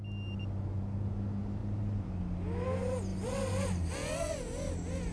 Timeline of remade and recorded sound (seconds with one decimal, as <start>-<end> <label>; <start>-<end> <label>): 0.0-1.6 recorded; 1.6-2.1 remade; 2.1-3.1 recorded; 3.1-3.9 remade; 3.9-5.1 recorded